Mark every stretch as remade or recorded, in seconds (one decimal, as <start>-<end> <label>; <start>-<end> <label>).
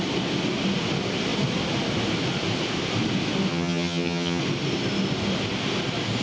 0.0-3.5 recorded; 3.5-4.4 remade; 4.4-6.2 recorded